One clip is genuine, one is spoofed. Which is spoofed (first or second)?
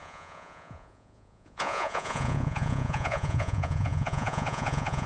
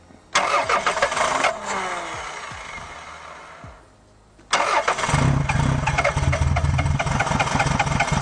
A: first